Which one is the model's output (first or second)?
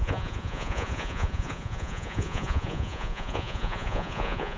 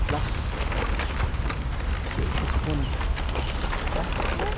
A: first